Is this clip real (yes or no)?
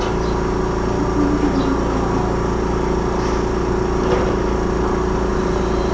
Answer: yes